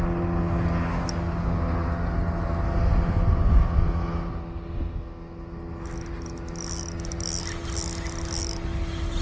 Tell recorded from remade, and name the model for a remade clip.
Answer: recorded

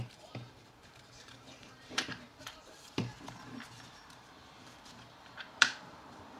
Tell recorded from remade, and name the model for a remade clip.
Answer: remade, vocoder, BigVGAN v2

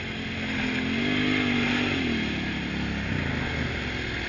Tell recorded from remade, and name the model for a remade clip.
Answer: recorded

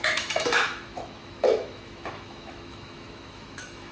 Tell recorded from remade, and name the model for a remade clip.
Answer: remade, autoencoder, DAC-VAE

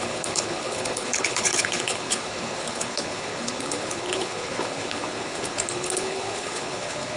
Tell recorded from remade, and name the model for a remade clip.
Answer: remade, codec, HILCodec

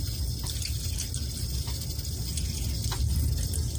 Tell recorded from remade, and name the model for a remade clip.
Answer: recorded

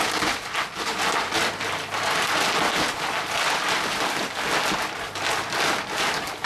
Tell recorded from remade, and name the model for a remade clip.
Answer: recorded